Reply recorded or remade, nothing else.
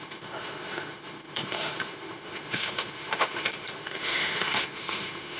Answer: remade